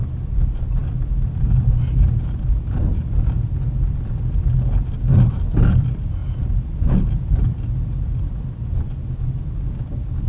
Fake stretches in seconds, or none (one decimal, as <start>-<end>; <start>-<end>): 0.8-1.4; 6.2-8.7